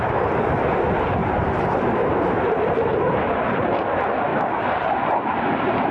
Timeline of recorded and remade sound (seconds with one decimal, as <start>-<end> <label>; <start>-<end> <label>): 0.0-1.2 recorded; 1.2-3.7 remade; 3.7-4.3 recorded; 4.3-5.9 remade

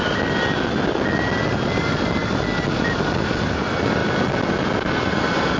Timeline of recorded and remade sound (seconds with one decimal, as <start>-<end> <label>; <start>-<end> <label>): 0.0-5.6 recorded

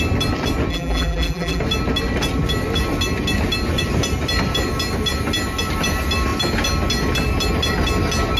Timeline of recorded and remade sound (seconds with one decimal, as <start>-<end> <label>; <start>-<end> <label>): 0.0-0.7 recorded; 0.7-1.6 remade; 1.6-8.4 recorded

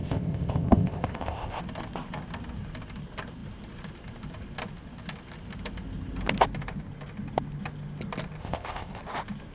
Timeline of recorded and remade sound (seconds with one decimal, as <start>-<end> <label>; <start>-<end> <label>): 0.0-1.6 remade; 1.6-8.4 recorded; 8.4-9.0 remade; 9.0-9.5 recorded

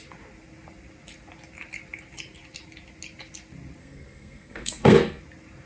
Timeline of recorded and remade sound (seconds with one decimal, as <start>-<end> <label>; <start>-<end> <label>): 0.0-3.8 recorded; 3.8-5.2 remade; 5.2-5.7 recorded